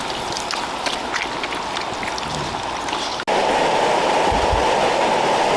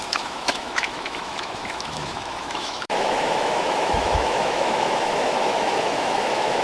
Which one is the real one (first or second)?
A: first